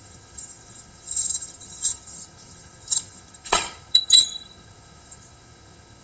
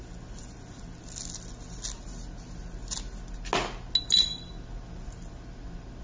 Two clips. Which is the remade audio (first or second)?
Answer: first